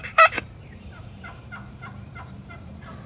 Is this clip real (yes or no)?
no